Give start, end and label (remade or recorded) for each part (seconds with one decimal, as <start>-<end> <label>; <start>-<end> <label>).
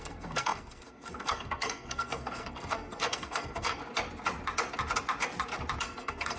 0.0-3.8 remade; 3.8-5.8 recorded; 5.8-6.4 remade